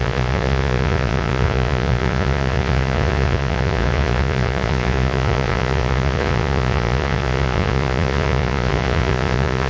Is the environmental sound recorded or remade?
remade